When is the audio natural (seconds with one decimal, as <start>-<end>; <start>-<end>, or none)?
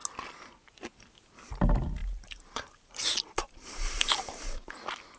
0.0-2.0; 4.7-5.2